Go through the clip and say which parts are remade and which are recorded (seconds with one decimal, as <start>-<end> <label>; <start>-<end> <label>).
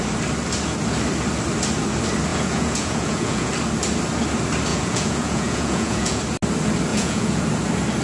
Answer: 0.0-2.3 recorded; 2.3-3.5 remade; 3.5-4.7 recorded; 4.7-6.2 remade; 6.2-6.9 recorded; 6.9-7.4 remade; 7.4-8.0 recorded